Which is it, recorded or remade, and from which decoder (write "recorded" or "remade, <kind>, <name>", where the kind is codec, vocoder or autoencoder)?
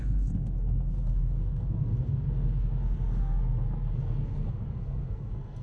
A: remade, codec, SNAC